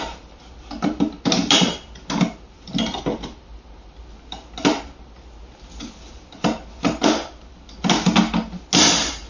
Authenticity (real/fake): real